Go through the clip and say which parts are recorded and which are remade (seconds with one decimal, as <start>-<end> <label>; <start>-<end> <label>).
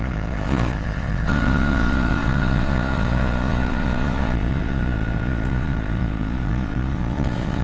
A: 0.0-7.6 remade